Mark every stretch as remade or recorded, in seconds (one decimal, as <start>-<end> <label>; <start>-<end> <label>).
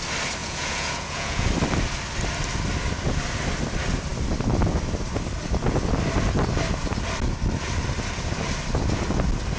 0.0-0.4 recorded; 0.4-1.5 remade; 1.5-9.6 recorded